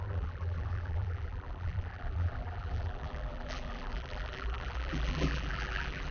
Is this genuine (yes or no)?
no